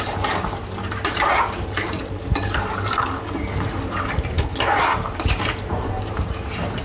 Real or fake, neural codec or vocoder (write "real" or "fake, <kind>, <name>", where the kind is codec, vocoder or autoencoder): fake, vocoder, BigVGAN v2